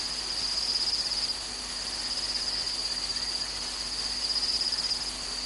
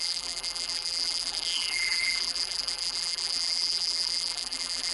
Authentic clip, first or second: first